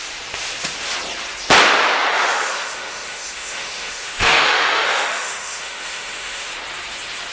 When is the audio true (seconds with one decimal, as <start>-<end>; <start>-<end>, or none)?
0.0-2.1; 6.5-7.3